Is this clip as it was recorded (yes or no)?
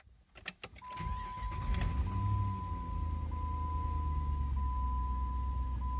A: yes